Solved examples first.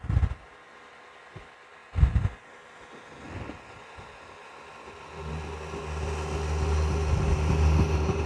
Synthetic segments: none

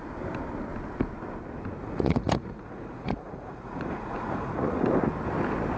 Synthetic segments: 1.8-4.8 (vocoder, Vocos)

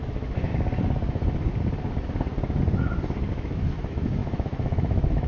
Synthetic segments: 0.0-0.5 (autoencoder, DAC-VAE); 3.3-5.3

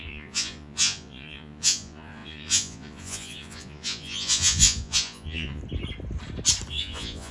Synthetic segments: 0.0-5.6 (vocoder, Vocos); 6.7-7.3

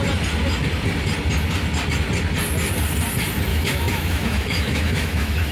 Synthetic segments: 3.5-5.5 (autoencoder, DAC-VAE)

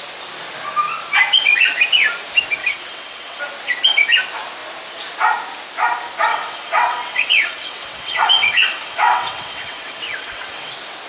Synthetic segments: 2.6-3.4 (vocoder, WaveNeXt); 6.3-10.7

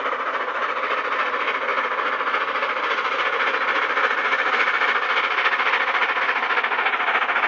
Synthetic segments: none